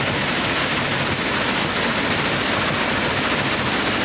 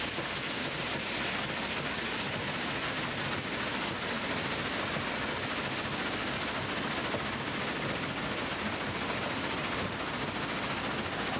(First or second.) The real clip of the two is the second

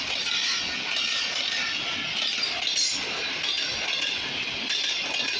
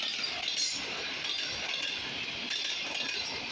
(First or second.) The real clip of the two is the first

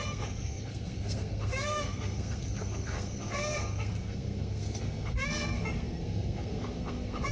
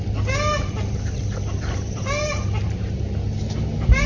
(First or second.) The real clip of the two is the second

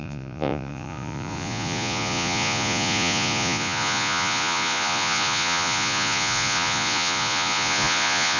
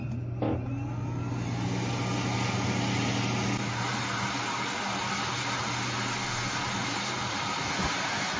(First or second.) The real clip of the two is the second